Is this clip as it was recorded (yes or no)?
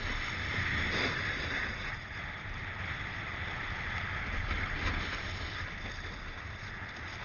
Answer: yes